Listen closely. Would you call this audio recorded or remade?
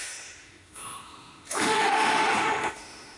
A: remade